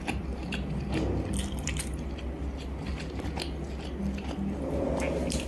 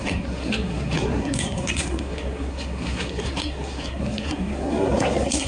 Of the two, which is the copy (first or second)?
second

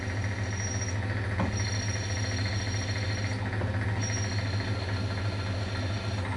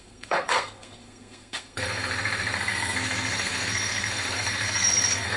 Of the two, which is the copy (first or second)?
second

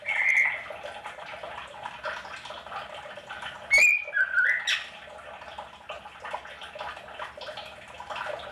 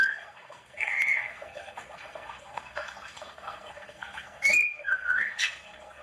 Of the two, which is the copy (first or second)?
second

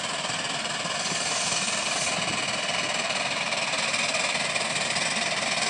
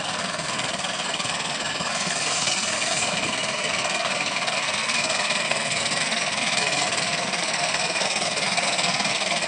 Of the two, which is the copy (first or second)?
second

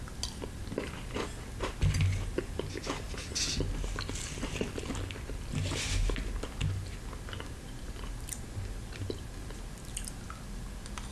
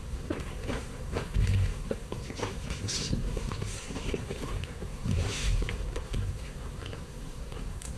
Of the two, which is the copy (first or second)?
second